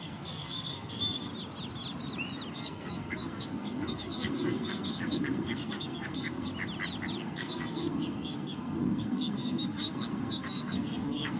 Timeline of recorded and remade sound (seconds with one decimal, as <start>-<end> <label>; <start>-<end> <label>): 0.0-1.3 remade; 1.3-2.5 recorded; 2.5-6.5 remade; 6.5-7.2 recorded; 7.2-11.4 remade